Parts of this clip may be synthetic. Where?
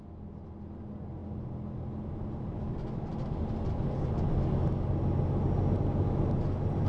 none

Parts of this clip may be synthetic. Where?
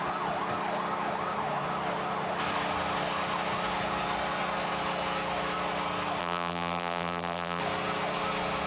6.2-7.6 (vocoder, BigVGAN v2)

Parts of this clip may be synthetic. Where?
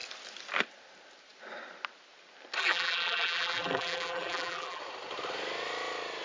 2.6-4.8 (vocoder, BigVGAN v2)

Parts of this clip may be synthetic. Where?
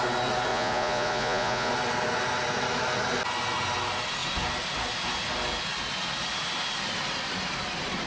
0.5-1.7 (vocoder, Vocos)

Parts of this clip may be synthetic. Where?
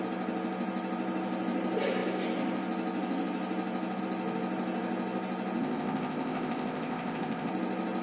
5.6-7.5 (codec, ZipCodec)